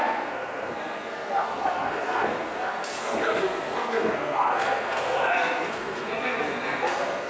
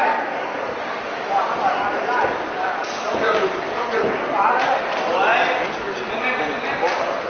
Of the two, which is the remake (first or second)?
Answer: first